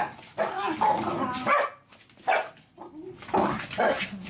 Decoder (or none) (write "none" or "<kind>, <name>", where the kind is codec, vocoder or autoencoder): none